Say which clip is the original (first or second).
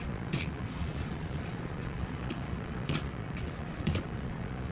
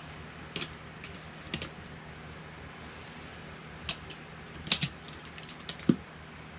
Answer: second